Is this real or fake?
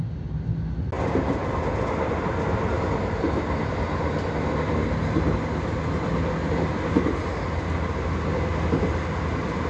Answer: real